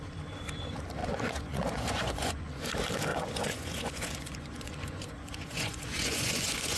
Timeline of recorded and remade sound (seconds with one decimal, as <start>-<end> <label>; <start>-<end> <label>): 0.0-1.0 recorded; 1.0-2.6 remade; 2.6-3.1 recorded; 3.1-6.8 remade